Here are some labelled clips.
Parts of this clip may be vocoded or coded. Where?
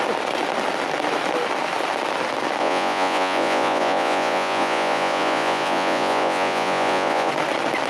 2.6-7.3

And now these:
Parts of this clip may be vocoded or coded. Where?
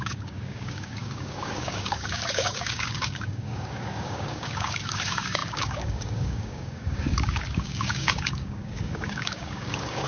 0.0-10.1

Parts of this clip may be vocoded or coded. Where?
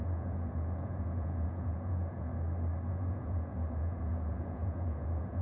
0.0-2.3; 2.9-5.4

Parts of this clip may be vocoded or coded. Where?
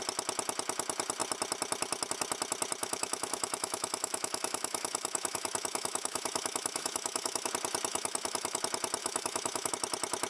2.8-7.5; 7.9-8.6; 9.0-9.7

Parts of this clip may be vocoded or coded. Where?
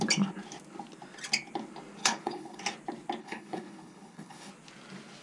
2.0-2.6; 3.2-4.5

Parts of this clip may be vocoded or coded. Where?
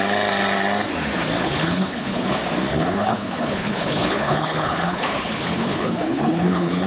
1.4-2.3; 2.7-6.9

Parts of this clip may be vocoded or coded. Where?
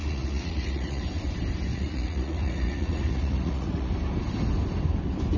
0.0-1.0; 1.7-3.9